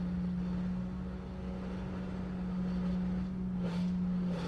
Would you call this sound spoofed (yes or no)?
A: no